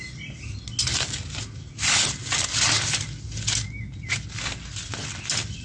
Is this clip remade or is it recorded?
recorded